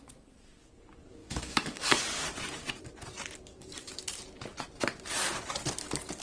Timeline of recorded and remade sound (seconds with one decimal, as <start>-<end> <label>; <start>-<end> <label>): 0.0-1.2 recorded; 1.2-2.0 remade; 2.0-3.5 recorded; 3.5-4.0 remade; 4.0-6.2 recorded